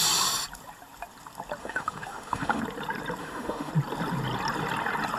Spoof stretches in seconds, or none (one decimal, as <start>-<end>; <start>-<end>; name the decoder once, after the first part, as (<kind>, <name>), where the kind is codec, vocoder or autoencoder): 1.6-2.6 (autoencoder, DAC-VAE); 3.2-3.7